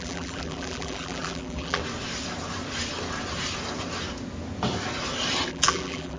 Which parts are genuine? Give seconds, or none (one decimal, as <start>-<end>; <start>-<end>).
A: 1.8-5.5